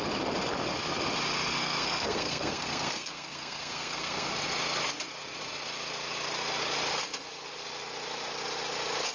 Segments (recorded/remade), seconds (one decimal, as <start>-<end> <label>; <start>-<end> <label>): 0.0-1.6 recorded; 1.6-4.3 remade; 4.3-9.1 recorded